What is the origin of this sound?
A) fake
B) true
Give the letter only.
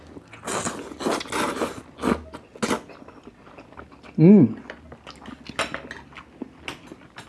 B